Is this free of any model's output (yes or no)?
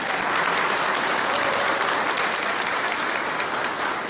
yes